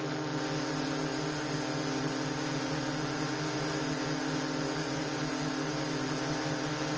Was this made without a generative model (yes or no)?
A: yes